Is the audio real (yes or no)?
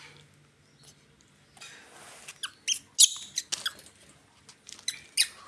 yes